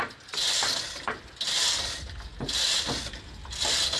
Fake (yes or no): no